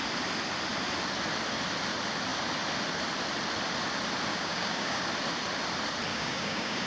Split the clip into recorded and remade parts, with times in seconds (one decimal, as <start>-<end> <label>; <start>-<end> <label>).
0.0-4.3 recorded; 4.3-5.0 remade; 5.0-6.1 recorded; 6.1-6.9 remade